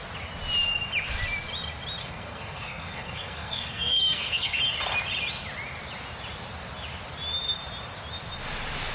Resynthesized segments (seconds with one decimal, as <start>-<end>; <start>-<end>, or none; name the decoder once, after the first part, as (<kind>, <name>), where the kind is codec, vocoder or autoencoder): 2.0-4.6 (codec, SNAC)